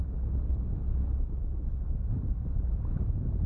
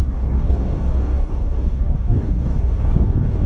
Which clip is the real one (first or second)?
first